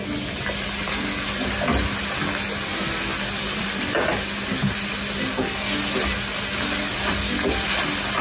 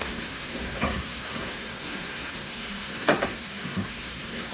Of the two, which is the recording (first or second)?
first